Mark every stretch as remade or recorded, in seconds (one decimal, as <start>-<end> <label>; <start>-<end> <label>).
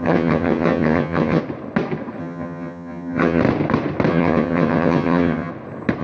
0.0-1.4 remade; 1.4-2.2 recorded; 2.2-3.4 remade; 3.4-4.1 recorded; 4.1-5.5 remade; 5.5-6.0 recorded